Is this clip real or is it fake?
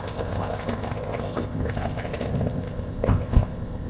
fake